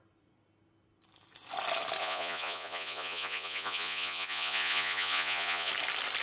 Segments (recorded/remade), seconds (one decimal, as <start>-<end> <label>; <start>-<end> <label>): 0.0-2.0 recorded; 2.0-5.7 remade; 5.7-6.2 recorded